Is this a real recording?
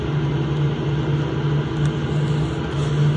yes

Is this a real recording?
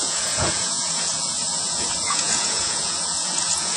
no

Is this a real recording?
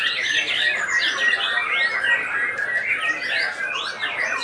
yes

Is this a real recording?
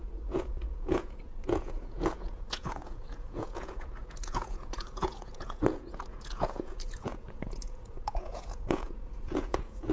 no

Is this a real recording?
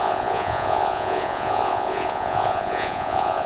no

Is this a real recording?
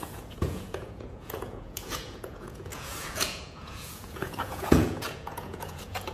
no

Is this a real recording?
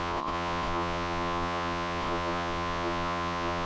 no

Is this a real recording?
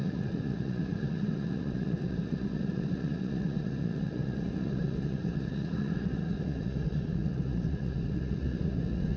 no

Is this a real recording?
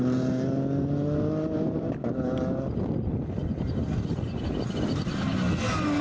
yes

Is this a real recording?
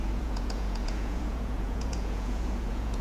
no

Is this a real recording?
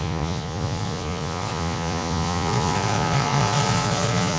no